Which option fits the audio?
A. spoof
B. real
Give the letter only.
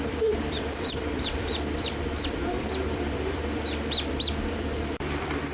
A